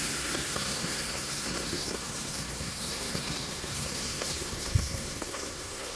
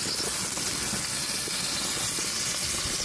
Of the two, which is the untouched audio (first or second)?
second